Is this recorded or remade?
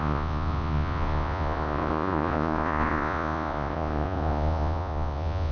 remade